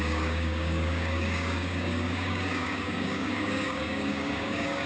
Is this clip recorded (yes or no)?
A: no